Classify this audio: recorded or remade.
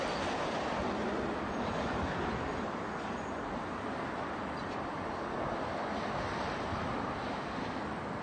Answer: remade